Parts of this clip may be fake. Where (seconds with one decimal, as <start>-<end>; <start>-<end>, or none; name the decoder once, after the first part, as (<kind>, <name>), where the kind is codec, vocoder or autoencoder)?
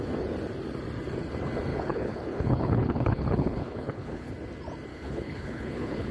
1.7-4.3 (codec, HILCodec); 4.9-6.1